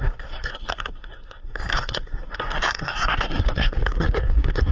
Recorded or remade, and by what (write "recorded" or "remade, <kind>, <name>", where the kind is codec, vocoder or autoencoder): remade, codec, SNAC